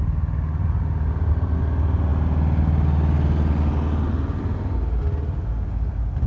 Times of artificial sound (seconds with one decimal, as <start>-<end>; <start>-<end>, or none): none